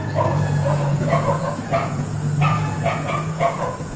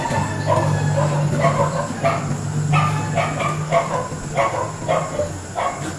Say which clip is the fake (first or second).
first